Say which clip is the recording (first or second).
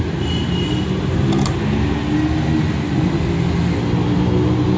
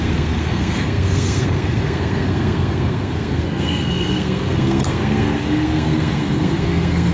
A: first